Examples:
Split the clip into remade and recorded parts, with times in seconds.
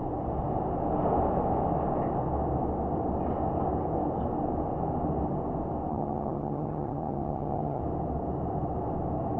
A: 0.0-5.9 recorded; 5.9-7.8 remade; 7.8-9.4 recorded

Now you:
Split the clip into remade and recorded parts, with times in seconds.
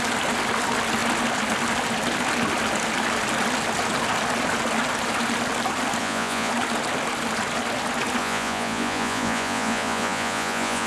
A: 0.0-6.0 recorded; 6.0-6.5 remade; 6.5-8.2 recorded; 8.2-10.9 remade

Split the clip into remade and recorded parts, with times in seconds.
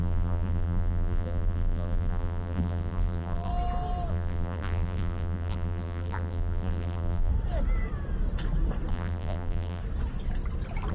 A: 0.0-3.5 remade; 3.5-4.1 recorded; 4.1-7.3 remade; 7.3-8.9 recorded; 8.9-9.8 remade; 9.8-10.9 recorded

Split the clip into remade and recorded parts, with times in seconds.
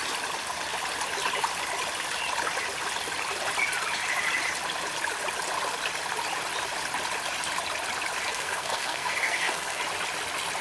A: 0.0-8.3 recorded; 8.3-9.8 remade; 9.8-10.6 recorded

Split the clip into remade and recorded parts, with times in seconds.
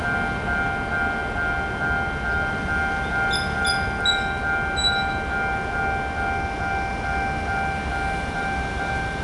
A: 0.0-9.2 recorded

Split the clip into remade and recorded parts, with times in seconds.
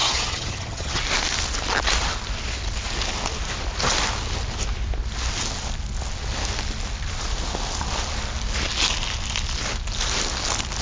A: 0.0-1.0 remade; 1.0-10.8 recorded